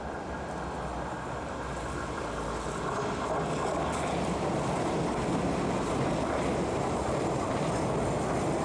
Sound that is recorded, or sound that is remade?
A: recorded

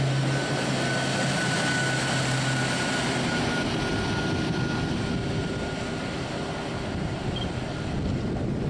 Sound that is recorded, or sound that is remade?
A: recorded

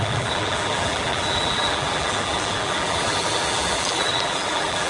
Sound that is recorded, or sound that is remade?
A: remade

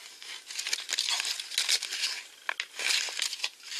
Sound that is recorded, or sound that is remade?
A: recorded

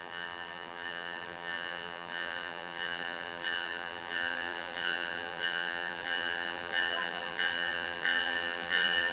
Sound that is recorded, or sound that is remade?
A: remade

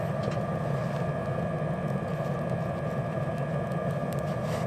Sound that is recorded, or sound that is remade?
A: recorded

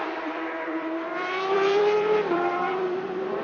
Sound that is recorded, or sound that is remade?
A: remade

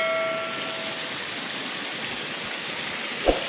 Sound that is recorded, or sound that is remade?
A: recorded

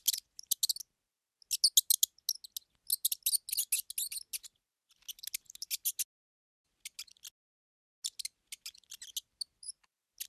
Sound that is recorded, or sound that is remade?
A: recorded